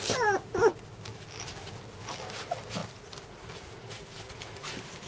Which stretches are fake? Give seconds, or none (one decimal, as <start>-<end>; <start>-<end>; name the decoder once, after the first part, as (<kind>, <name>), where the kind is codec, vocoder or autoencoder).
none